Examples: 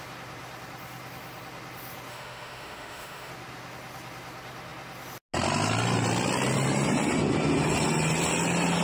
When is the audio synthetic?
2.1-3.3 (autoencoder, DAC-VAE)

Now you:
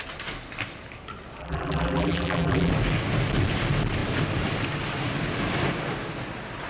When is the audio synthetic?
1.4-2.7 (vocoder, BigVGAN v2)

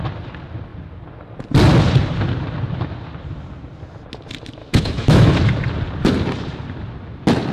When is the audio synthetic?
4.6-5.3 (autoencoder, DAC-VAE)